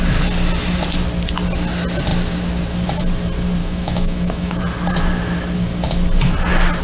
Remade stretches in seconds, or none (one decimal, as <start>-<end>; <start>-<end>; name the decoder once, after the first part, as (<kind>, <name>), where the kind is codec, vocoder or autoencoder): 3.6-4.6 (autoencoder, DAC-VAE)